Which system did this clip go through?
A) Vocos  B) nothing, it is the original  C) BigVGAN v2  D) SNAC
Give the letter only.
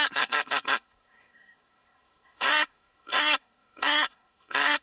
D